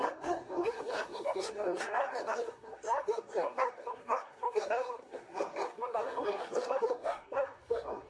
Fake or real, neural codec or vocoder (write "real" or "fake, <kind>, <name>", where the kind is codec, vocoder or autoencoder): fake, codec, SNAC